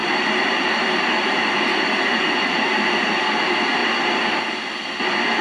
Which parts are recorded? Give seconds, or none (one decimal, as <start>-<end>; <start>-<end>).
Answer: 3.2-5.4